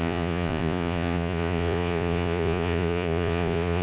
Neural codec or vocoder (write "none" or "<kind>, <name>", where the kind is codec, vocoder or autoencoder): vocoder, Vocos